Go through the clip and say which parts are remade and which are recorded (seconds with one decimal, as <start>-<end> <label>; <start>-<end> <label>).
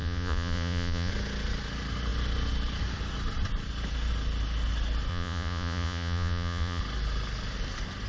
0.0-1.1 remade; 1.1-5.1 recorded; 5.1-6.8 remade; 6.8-8.1 recorded